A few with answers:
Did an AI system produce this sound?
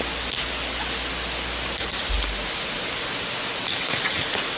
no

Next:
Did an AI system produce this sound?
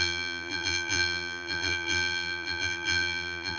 yes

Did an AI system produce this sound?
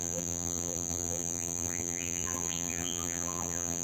yes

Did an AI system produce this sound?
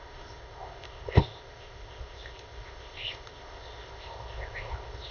yes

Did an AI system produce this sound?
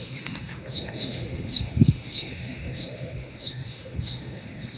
yes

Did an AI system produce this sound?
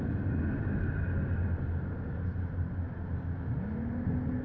no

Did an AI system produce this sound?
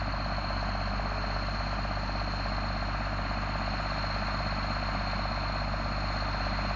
no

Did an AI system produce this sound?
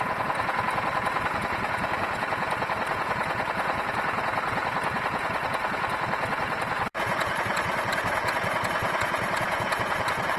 yes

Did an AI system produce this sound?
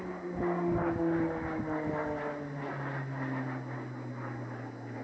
no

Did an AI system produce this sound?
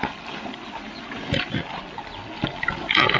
no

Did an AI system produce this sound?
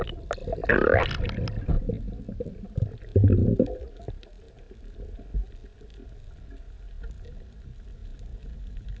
no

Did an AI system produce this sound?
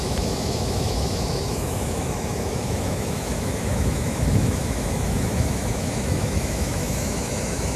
yes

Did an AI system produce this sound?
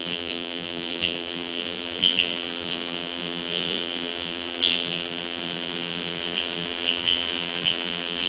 yes